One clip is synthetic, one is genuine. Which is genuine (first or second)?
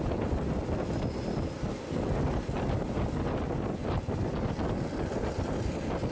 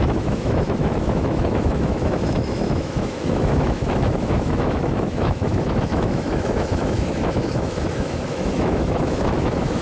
first